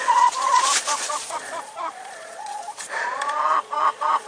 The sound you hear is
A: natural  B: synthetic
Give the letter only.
B